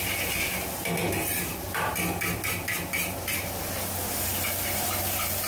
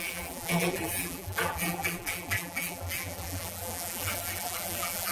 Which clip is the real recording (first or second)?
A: first